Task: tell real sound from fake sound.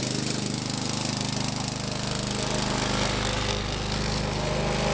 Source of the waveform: real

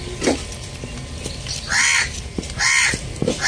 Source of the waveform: real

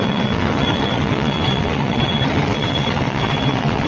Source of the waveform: fake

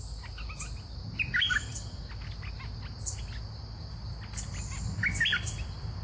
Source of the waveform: real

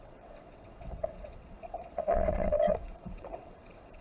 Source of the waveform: fake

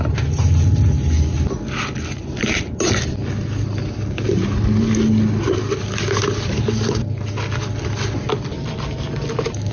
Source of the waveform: real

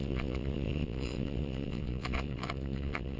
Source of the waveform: fake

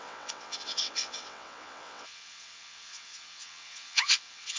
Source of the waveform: fake